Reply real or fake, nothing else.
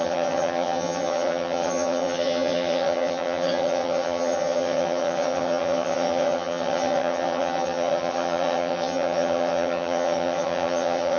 fake